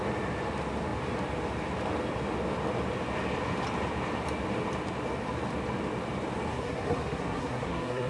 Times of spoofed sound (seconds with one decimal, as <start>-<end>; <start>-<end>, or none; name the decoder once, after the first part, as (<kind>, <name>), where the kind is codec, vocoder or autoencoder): 6.5-8.1 (codec, SNAC)

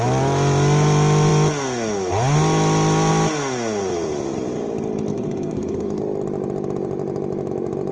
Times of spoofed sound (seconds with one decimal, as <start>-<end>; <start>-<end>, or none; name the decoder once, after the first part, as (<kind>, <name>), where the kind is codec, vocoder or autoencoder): 5.1-6.0 (codec, SNAC)

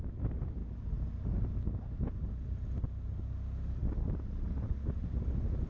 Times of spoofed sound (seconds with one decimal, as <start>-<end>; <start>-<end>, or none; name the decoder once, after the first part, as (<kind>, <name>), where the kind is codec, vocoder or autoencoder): none

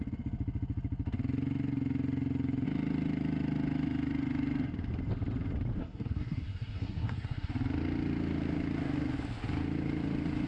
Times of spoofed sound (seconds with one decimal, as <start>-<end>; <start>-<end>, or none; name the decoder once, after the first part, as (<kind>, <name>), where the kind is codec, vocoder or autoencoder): 5.8-7.5 (codec, SNAC)

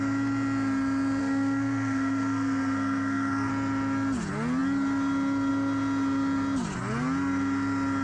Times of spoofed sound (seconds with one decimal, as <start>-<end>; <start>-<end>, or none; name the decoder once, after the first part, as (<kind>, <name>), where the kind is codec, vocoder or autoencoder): 1.2-3.5 (codec, SNAC)

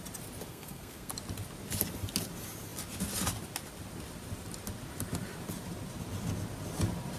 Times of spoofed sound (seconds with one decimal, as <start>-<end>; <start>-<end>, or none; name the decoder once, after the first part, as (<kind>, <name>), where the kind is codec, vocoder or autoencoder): 0.5-1.1 (codec, SNAC)

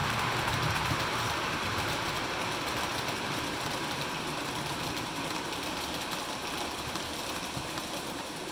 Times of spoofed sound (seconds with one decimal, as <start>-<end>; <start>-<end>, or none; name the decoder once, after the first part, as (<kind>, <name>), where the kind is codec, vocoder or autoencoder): 0.0-2.1 (vocoder, BigVGAN v2)